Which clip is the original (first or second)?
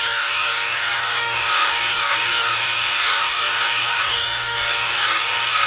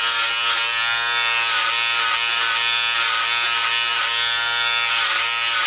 second